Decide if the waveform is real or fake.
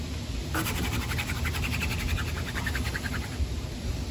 real